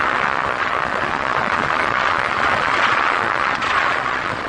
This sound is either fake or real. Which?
fake